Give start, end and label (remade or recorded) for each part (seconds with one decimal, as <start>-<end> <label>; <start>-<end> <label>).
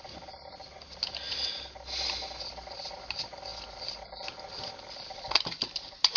0.0-3.5 recorded; 3.5-4.7 remade; 4.7-6.2 recorded